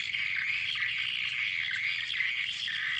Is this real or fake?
real